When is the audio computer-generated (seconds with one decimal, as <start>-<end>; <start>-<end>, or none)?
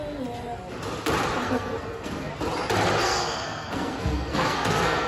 1.4-2.3; 3.0-5.1